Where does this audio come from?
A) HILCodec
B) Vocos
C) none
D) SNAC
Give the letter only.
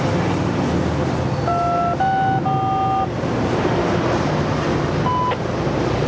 C